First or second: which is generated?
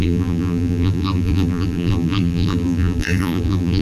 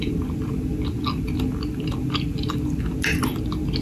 first